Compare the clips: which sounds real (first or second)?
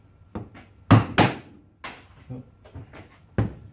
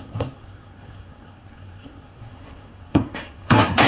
first